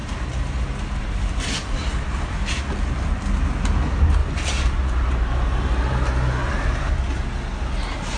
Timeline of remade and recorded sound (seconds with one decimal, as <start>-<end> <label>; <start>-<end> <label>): 0.0-4.2 recorded; 4.2-5.7 remade; 5.7-6.4 recorded; 6.4-6.9 remade; 6.9-8.2 recorded